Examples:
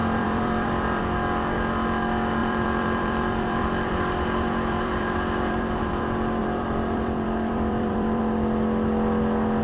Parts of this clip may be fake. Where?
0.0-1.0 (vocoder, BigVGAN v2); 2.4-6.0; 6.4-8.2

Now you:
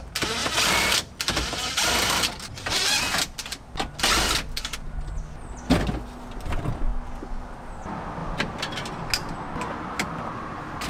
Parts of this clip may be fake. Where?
0.4-3.0 (vocoder, BigVGAN v2); 8.2-9.1